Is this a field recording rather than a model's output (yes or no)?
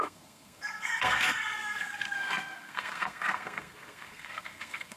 no